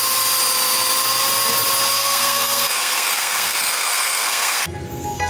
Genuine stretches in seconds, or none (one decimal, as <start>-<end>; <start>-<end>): 0.0-1.9